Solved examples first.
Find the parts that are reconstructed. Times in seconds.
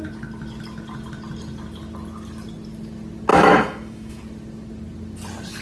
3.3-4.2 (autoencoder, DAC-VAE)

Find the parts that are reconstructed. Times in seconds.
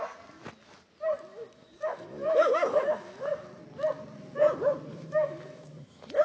1.3-3.3 (autoencoder, DAC-VAE); 4.9-6.2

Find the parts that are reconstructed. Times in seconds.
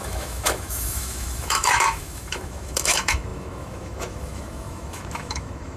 0.0-5.8 (autoencoder, DAC-VAE)